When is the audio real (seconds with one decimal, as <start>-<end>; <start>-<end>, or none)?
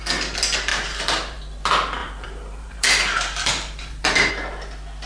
0.0-0.7; 1.4-2.0; 4.3-5.1